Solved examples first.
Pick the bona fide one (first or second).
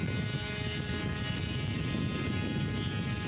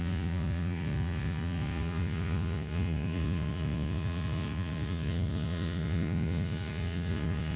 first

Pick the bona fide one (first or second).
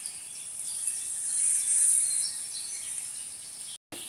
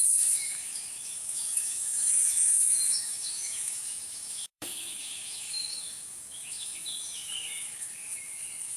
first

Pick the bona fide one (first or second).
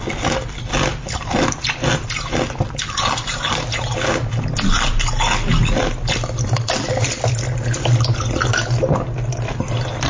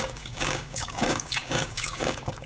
first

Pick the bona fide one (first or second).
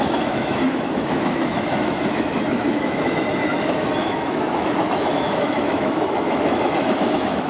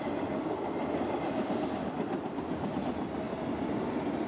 second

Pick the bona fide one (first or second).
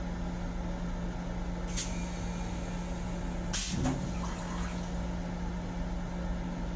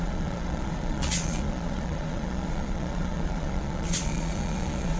first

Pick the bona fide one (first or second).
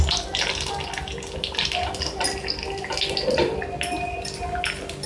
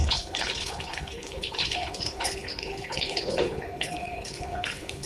first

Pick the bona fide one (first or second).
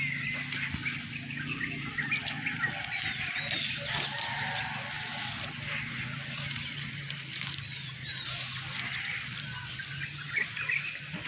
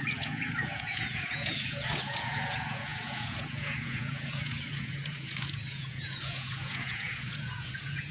first